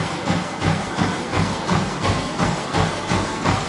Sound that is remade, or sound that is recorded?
remade